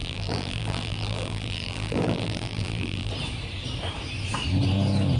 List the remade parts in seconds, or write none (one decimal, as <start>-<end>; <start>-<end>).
0.0-3.1